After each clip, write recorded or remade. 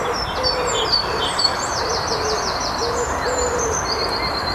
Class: recorded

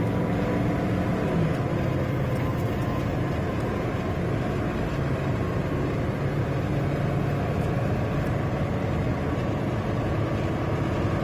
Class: recorded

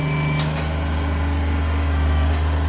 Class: recorded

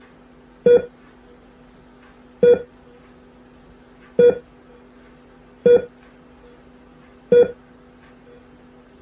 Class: recorded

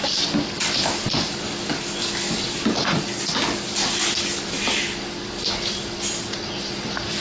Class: recorded